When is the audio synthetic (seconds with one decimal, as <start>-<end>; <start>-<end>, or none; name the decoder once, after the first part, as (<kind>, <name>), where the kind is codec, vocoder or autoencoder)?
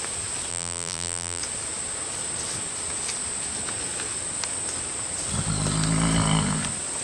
0.5-1.4 (vocoder, BigVGAN v2)